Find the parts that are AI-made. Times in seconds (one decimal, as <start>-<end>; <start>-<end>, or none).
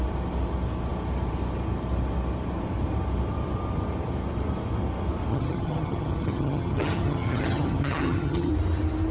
5.3-8.5